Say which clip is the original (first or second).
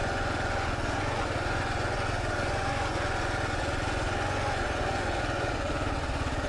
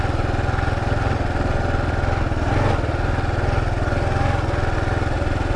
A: second